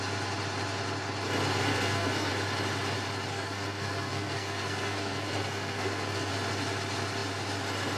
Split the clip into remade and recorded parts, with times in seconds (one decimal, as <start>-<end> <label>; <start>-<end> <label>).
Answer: 0.0-1.7 recorded; 1.7-2.3 remade; 2.3-3.3 recorded; 3.3-6.3 remade; 6.3-8.0 recorded